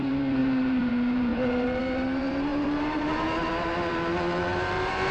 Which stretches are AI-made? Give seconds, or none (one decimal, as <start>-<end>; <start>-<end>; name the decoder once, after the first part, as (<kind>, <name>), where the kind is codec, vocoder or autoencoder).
0.0-5.1 (vocoder, BigVGAN v2)